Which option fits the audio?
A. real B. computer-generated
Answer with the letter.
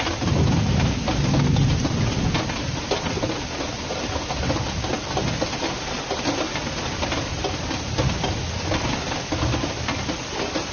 A